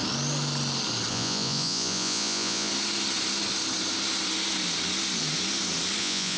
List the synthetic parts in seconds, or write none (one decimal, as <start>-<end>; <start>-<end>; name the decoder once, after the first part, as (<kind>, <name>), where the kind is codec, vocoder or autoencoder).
1.1-2.7 (vocoder, Vocos); 6.0-6.4